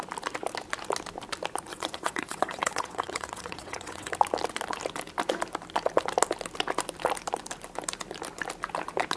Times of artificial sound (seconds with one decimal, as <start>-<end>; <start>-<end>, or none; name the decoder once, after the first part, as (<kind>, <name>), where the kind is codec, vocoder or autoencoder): 1.7-4.1 (vocoder, WaveNeXt)